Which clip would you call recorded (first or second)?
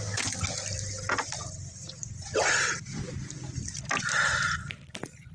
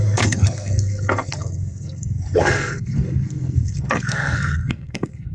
first